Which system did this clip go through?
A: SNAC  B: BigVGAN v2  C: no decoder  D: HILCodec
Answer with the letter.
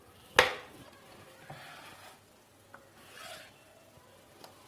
C